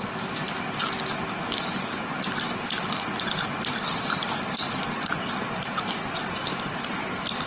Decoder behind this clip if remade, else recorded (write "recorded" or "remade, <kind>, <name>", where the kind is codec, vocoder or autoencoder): recorded